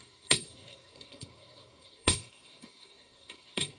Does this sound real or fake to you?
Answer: fake